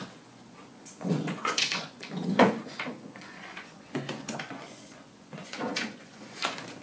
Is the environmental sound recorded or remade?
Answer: remade